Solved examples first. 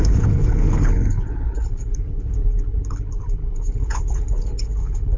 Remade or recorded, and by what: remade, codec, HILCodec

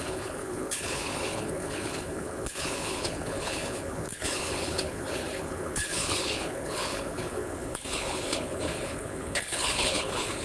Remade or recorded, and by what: remade, codec, HILCodec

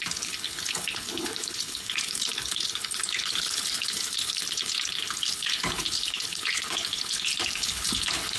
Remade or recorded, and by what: remade, codec, HILCodec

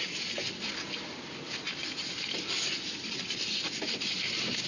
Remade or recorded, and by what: recorded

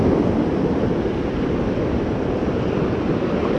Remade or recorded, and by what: recorded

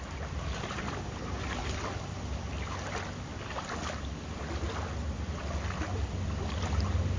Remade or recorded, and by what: recorded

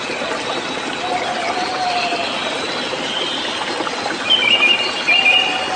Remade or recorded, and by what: recorded